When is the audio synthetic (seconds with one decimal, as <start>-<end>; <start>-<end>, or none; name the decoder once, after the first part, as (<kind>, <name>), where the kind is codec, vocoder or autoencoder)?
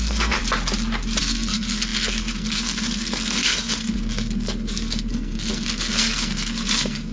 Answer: 0.0-0.4 (codec, SNAC); 1.2-7.1